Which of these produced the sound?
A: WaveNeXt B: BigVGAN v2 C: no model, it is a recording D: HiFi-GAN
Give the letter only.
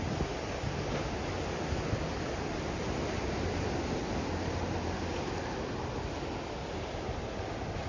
C